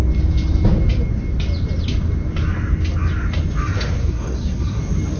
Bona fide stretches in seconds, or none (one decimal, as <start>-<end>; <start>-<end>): 0.0-4.0; 4.8-5.2